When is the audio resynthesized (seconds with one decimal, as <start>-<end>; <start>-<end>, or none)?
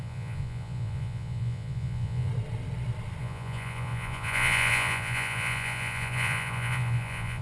0.0-2.3; 3.2-7.4